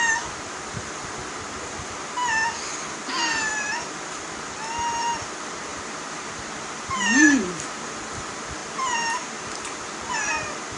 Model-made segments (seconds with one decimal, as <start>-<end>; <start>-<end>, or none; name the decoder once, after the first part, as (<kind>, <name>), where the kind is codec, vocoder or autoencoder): 5.7-7.8 (vocoder, BigVGAN v2); 8.6-9.5